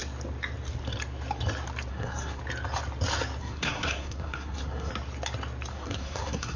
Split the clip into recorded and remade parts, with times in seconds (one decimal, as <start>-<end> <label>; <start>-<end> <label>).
0.0-1.9 recorded; 1.9-2.4 remade; 2.4-3.4 recorded; 3.4-4.9 remade; 4.9-5.7 recorded; 5.7-6.6 remade